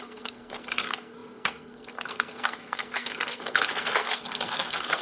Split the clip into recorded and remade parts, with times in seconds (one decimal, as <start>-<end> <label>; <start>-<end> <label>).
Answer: 0.0-5.0 remade